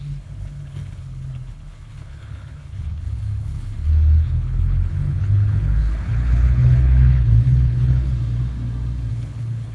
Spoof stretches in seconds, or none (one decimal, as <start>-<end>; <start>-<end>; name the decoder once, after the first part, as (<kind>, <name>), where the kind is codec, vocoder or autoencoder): 0.0-8.1 (codec, HILCodec); 9.1-9.7